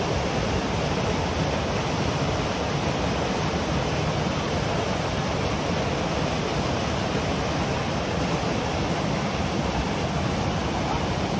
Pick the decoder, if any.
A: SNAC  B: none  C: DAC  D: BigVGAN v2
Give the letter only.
B